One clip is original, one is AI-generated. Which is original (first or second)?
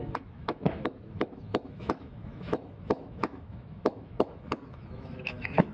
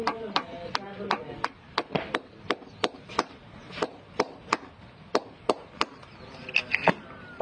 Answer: second